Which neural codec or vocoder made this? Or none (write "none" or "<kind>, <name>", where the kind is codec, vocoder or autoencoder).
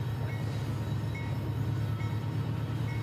none